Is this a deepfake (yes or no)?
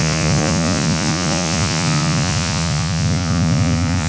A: yes